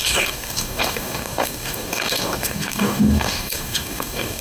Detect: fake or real fake